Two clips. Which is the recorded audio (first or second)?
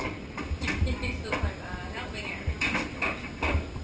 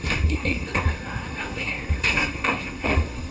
first